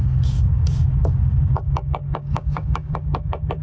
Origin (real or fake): fake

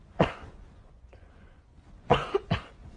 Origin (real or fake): fake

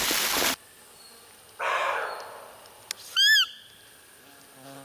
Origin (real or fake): real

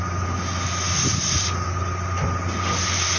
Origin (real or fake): real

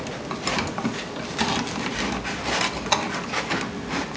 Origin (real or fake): real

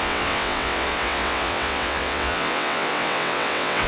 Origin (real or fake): fake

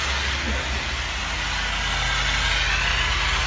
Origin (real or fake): real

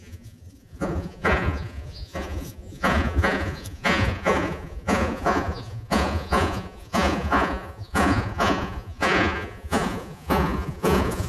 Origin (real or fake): fake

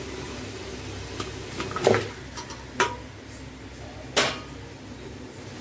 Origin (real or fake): real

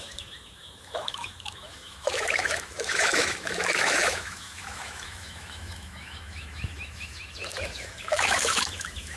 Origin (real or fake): fake